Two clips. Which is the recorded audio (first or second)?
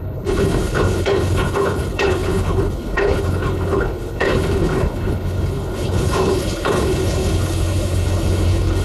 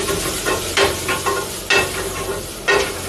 second